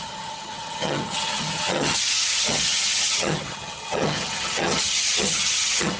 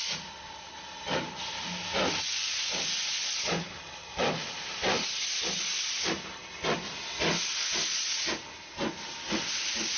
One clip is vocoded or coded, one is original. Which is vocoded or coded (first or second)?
first